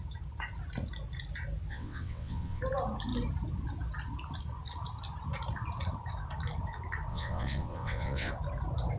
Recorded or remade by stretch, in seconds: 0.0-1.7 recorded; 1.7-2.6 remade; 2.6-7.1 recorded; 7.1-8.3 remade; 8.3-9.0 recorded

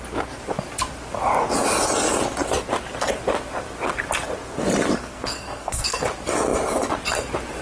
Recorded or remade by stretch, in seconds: 0.0-5.0 recorded; 5.0-6.0 remade; 6.0-7.6 recorded

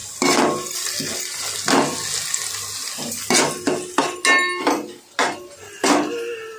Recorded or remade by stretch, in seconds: 0.0-6.6 recorded